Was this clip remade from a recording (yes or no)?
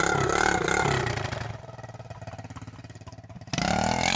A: no